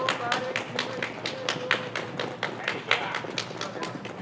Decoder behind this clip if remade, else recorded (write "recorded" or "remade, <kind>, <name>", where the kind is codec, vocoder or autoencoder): recorded